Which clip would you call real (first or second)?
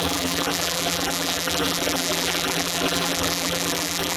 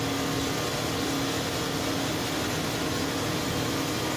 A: second